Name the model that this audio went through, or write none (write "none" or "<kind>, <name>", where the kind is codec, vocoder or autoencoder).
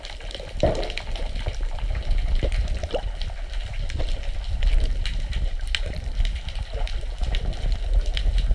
none